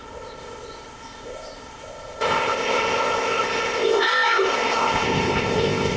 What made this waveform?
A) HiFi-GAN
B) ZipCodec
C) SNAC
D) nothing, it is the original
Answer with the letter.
B